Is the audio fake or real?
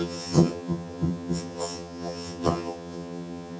fake